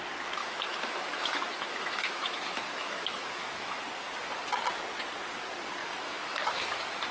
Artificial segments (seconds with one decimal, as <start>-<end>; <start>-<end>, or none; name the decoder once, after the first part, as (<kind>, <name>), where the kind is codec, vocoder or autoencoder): 0.4-3.8 (autoencoder, DAC-VAE); 5.8-7.1